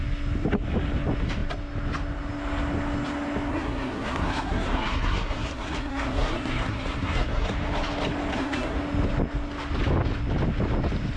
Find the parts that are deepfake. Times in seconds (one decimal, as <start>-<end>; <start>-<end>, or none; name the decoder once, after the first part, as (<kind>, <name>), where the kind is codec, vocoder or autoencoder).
3.5-7.5 (codec, SNAC); 8.3-8.8